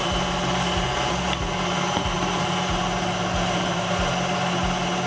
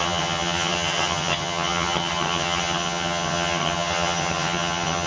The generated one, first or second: second